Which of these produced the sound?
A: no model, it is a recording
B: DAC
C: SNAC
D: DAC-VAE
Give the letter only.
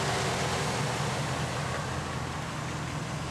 A